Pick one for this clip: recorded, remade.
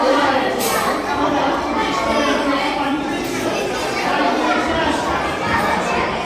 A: remade